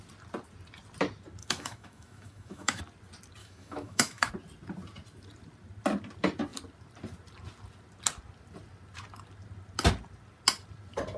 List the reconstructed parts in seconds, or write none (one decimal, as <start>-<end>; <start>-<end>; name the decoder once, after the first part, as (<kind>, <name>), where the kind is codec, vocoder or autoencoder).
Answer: 1.4-2.8 (autoencoder, DAC-VAE); 3.4-4.3